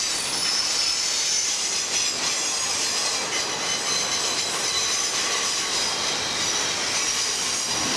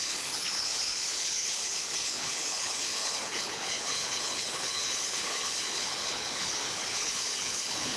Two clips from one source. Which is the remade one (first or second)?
second